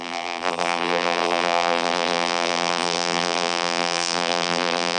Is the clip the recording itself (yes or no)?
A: no